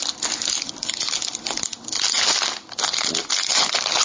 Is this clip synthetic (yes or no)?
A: no